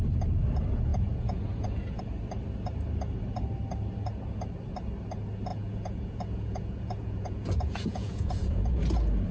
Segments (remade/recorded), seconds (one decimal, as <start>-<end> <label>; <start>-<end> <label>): 0.0-0.9 recorded; 0.9-2.0 remade; 2.0-5.5 recorded; 5.5-8.8 remade; 8.8-9.3 recorded